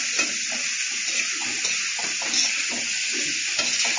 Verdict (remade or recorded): recorded